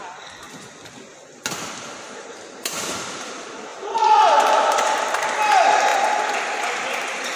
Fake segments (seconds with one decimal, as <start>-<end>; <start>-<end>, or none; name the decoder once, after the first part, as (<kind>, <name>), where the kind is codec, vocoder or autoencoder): 3.7-5.0 (vocoder, BigVGAN v2)